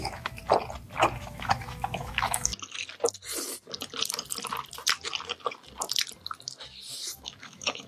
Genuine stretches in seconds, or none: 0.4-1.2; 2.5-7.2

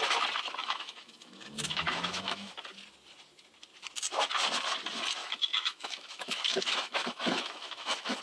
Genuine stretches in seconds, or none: 0.0-0.6; 2.5-5.2

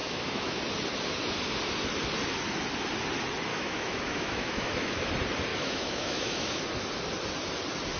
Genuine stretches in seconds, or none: 0.6-3.5; 5.1-5.5; 6.6-8.0

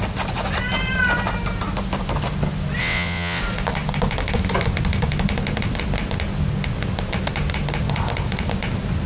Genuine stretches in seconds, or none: 0.0-2.8; 3.4-9.1

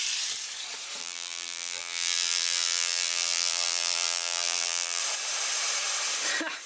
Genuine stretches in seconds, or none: 0.0-1.0; 5.0-6.7

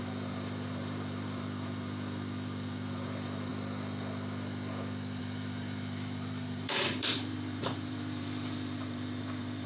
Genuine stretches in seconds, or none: 3.5-5.2